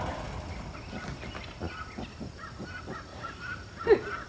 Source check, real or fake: real